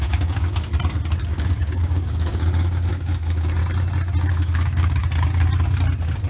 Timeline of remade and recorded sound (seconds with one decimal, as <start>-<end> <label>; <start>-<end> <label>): 0.0-0.7 remade; 0.7-1.2 recorded; 1.2-3.6 remade; 3.6-4.3 recorded; 4.3-5.0 remade; 5.0-6.3 recorded